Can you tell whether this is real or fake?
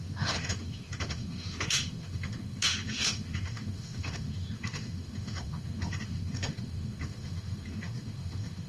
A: fake